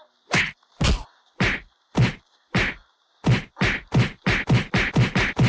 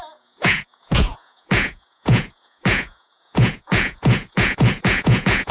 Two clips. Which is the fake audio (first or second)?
second